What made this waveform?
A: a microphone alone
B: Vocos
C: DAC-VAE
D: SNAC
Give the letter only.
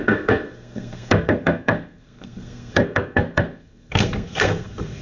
D